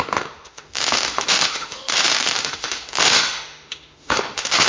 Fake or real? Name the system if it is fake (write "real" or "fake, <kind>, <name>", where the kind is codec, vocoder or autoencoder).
fake, autoencoder, DAC-VAE